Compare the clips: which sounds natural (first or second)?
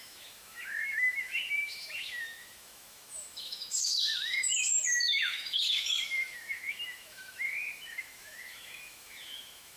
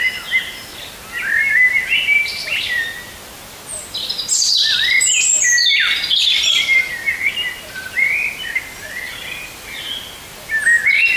second